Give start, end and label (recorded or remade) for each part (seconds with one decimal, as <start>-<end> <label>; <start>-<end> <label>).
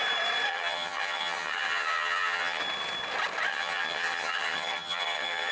0.0-0.5 recorded; 0.5-2.6 remade; 2.6-3.5 recorded; 3.5-5.5 remade